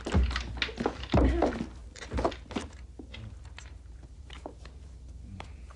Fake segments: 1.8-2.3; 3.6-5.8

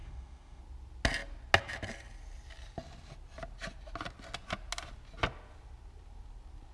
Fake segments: 0.0-0.6

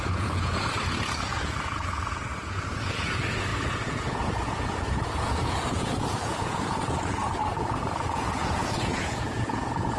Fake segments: 0.0-10.0

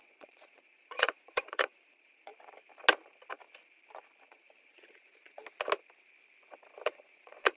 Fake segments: 0.0-2.3; 4.2-5.4; 6.9-7.6

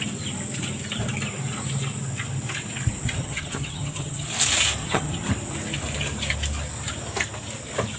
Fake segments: 3.2-4.3; 4.8-5.3

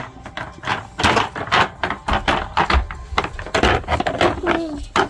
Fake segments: none